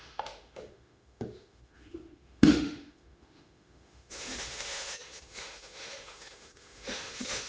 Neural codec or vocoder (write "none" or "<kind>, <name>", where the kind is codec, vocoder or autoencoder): autoencoder, DAC-VAE